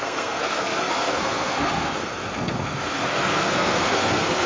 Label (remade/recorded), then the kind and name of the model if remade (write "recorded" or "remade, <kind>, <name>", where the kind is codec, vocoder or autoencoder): remade, codec, SNAC